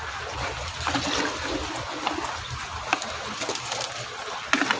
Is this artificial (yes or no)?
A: no